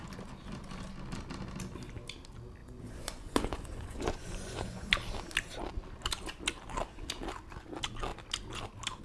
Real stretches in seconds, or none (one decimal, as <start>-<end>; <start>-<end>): 0.0-2.6; 4.9-9.0